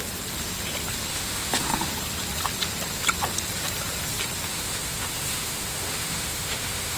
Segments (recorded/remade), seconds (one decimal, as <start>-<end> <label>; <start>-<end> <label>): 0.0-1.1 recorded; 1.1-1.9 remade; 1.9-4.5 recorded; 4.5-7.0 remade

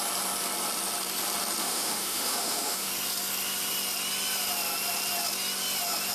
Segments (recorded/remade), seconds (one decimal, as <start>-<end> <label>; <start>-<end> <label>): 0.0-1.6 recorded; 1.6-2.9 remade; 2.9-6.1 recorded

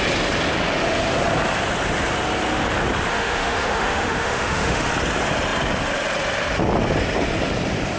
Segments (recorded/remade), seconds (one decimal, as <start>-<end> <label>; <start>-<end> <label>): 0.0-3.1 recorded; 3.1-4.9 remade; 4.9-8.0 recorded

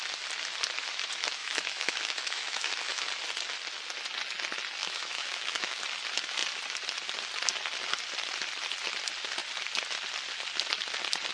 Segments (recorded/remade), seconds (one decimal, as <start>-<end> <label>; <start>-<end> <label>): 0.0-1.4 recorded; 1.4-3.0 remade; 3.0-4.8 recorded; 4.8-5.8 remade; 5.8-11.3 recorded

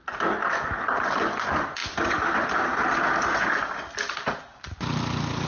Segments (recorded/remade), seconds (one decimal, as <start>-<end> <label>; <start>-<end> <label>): 0.0-5.5 recorded

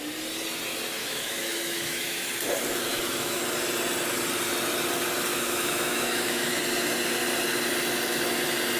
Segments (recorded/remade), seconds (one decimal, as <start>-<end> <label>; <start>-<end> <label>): 0.0-1.0 recorded; 1.0-2.3 remade; 2.3-2.9 recorded; 2.9-3.4 remade; 3.4-5.3 recorded; 5.3-6.6 remade; 6.6-8.8 recorded

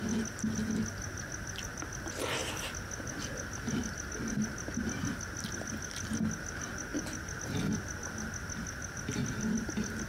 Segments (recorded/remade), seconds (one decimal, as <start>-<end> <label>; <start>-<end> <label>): 0.0-10.1 recorded